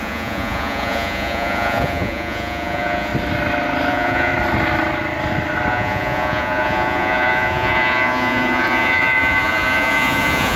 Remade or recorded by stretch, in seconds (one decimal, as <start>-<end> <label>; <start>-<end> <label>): 0.0-3.1 remade; 3.1-3.9 recorded; 3.9-4.3 remade; 4.3-5.7 recorded; 5.7-10.6 remade